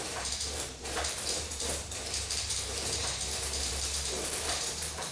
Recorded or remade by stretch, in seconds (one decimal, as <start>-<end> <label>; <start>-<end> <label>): 0.0-3.0 remade; 3.0-3.7 recorded; 3.7-5.1 remade